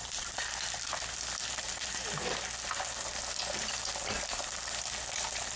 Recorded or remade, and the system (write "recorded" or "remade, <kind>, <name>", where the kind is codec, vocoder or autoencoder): recorded